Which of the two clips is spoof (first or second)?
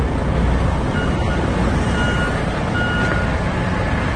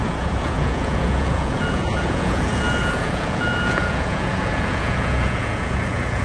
second